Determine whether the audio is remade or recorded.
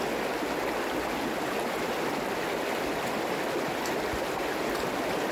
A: recorded